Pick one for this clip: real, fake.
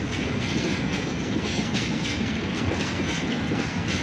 fake